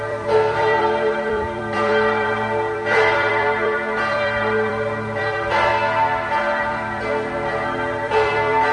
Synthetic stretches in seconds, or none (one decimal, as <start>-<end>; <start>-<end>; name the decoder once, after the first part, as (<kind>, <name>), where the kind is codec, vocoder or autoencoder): 0.0-5.7 (vocoder, BigVGAN v2); 6.4-8.7